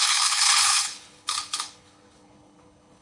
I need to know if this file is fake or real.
fake